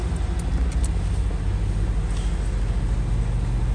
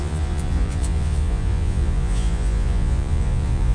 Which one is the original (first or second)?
first